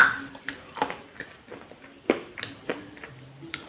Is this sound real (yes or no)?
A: yes